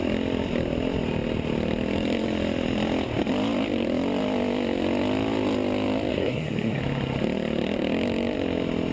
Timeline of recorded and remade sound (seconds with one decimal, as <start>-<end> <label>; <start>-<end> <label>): 0.0-6.1 recorded; 6.1-6.8 remade; 6.8-8.9 recorded